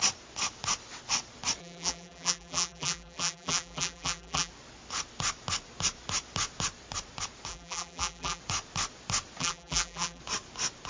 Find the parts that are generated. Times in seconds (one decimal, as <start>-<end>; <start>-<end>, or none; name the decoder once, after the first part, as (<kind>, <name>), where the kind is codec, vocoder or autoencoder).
1.6-4.5 (vocoder, BigVGAN v2); 7.5-8.4; 9.4-10.2